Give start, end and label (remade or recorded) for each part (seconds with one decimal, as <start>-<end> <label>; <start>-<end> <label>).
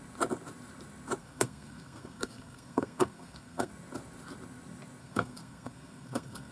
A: 0.0-1.2 recorded; 1.2-3.7 remade; 3.7-5.0 recorded; 5.0-6.5 remade